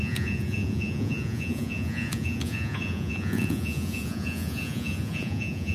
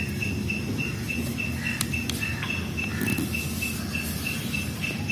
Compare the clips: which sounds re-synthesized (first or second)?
first